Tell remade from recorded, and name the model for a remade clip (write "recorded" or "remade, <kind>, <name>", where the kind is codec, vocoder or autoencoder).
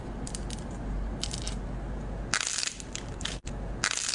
recorded